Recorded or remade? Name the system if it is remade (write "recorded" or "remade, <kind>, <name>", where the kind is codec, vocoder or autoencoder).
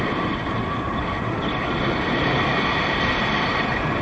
recorded